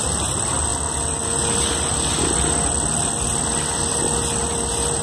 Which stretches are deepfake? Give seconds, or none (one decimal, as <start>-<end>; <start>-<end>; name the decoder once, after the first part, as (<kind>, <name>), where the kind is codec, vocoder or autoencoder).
none